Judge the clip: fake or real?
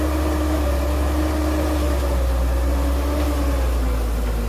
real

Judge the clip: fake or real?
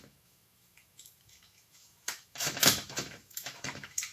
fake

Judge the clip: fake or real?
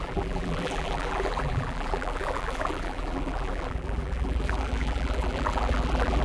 fake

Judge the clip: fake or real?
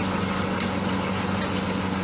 real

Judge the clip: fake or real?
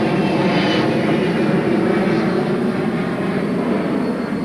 real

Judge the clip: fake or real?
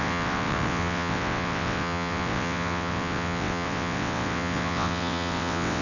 fake